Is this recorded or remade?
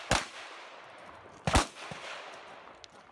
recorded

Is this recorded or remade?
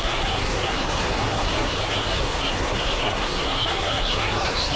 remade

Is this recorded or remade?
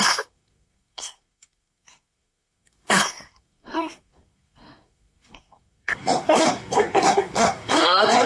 remade